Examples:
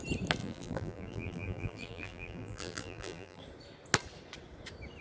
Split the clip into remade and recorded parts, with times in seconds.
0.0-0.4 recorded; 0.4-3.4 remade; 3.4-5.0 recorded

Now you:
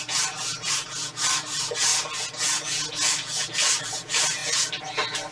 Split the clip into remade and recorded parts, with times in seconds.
0.0-1.9 remade; 1.9-3.8 recorded; 3.8-4.4 remade; 4.4-5.3 recorded

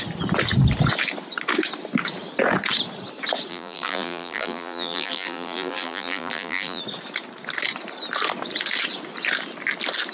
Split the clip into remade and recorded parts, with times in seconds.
0.0-3.5 recorded; 3.5-6.8 remade; 6.8-10.1 recorded

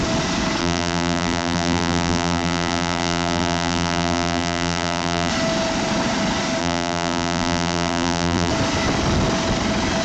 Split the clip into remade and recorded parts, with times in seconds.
0.0-0.6 recorded; 0.6-5.3 remade; 5.3-6.6 recorded; 6.6-8.5 remade; 8.5-10.0 recorded

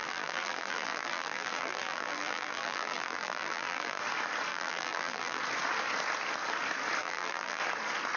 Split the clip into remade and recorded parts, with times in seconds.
0.0-4.0 remade; 4.0-4.5 recorded; 4.5-5.4 remade; 5.4-7.0 recorded; 7.0-7.6 remade; 7.6-8.2 recorded